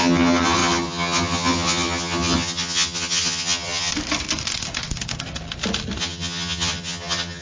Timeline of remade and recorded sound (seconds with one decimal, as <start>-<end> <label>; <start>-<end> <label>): 0.0-3.9 remade; 3.9-6.0 recorded; 6.0-7.4 remade